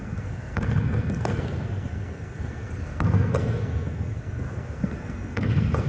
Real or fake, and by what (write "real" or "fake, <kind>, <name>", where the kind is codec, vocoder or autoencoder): fake, codec, SNAC